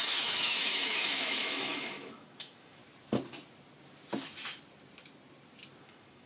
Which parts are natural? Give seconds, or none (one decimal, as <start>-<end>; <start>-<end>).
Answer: 2.8-5.8

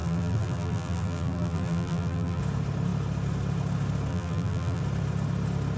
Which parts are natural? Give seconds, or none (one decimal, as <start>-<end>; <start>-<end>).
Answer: 2.4-4.1; 4.8-5.8